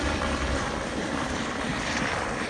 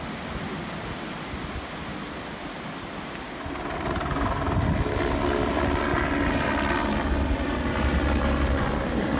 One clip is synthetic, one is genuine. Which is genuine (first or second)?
second